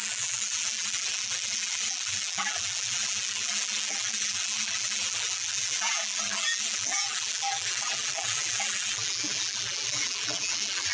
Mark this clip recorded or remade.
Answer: remade